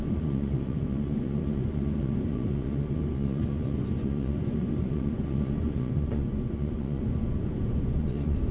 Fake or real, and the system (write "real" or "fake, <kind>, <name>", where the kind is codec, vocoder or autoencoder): fake, vocoder, Vocos